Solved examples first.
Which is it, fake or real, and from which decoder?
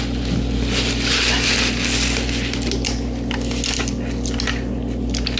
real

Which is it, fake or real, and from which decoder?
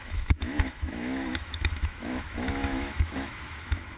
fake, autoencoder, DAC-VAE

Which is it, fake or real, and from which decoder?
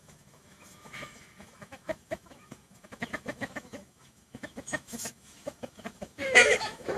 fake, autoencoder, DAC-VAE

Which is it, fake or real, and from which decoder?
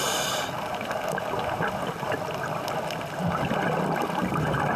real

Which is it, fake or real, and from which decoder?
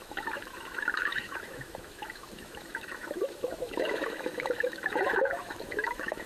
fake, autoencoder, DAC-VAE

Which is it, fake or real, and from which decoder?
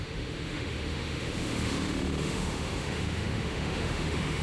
fake, autoencoder, DAC-VAE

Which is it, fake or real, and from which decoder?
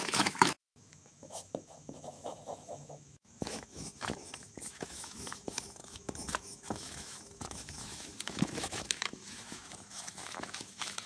fake, autoencoder, DAC-VAE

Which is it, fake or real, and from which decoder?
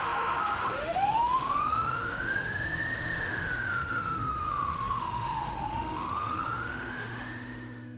fake, autoencoder, DAC-VAE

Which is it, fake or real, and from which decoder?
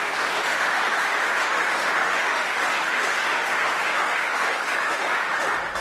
fake, autoencoder, DAC-VAE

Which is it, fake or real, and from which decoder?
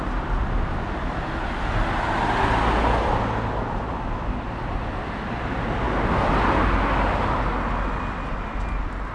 real